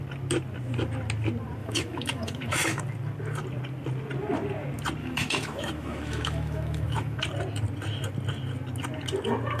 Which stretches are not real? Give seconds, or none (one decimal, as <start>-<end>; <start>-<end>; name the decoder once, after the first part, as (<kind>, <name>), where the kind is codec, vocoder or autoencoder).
1.6-2.8 (autoencoder, DAC-VAE); 5.0-7.2